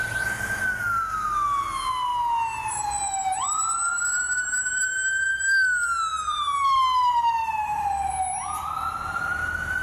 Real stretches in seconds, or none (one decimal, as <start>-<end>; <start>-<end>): 0.0-6.1; 8.1-9.8